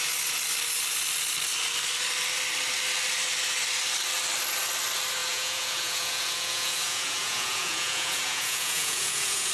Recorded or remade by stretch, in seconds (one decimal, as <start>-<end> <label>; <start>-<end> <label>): 0.0-5.2 recorded; 5.2-9.5 remade